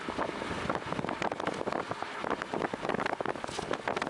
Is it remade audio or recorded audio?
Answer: recorded